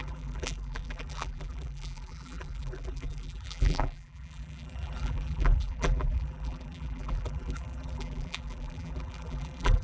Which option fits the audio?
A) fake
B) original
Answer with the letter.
A